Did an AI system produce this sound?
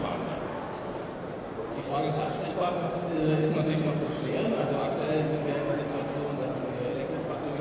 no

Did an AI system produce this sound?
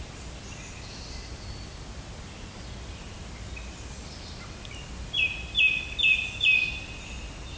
no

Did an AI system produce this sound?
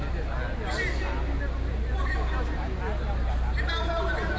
no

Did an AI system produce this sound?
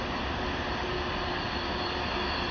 no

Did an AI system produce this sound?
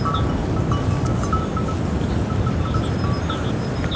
no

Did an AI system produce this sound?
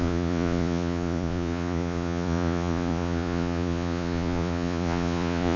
yes